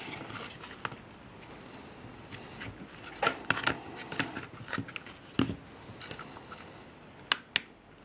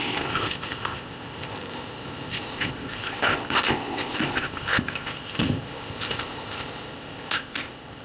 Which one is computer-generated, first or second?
second